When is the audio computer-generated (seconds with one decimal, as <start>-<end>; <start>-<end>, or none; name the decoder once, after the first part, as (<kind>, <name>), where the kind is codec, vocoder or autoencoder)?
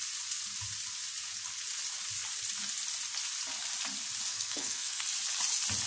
4.3-5.0 (codec, SNAC)